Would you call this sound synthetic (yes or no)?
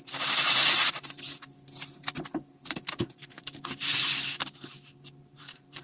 yes